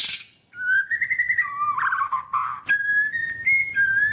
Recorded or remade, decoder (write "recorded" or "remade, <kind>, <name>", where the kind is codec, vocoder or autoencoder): recorded